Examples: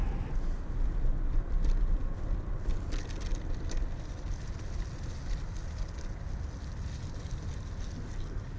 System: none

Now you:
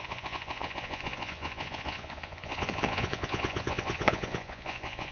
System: vocoder, Vocos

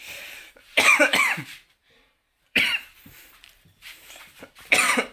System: vocoder, BigVGAN v2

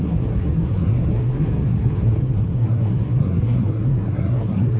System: codec, SNAC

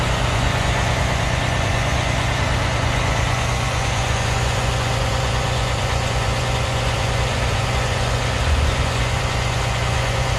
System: vocoder, Vocos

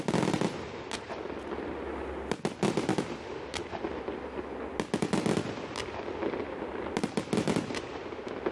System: none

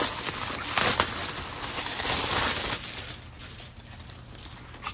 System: none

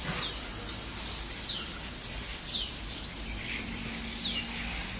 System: none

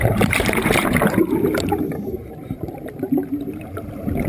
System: vocoder, BigVGAN v2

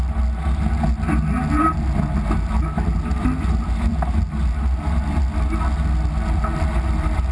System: none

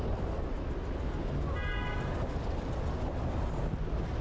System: none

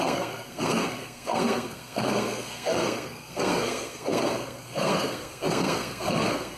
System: codec, SNAC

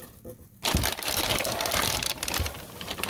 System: none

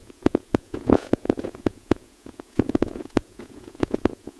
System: vocoder, Vocos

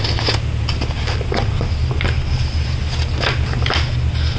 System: none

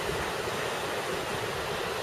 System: none